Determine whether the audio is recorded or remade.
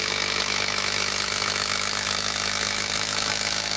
remade